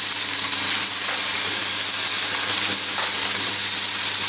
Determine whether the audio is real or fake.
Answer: real